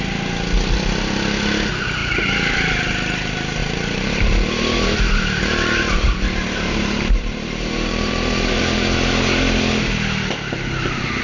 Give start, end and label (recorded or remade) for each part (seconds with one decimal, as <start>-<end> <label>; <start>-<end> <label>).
0.0-2.0 recorded; 2.0-2.9 remade; 2.9-3.6 recorded; 3.6-8.6 remade; 8.6-11.2 recorded